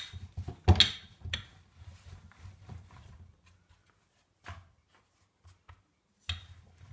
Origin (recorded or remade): recorded